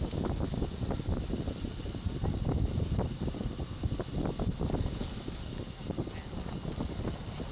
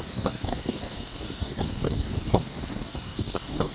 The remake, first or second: second